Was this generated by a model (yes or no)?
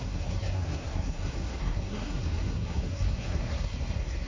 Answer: yes